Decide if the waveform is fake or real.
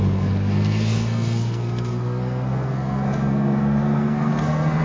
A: fake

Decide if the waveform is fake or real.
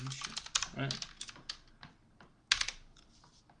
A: real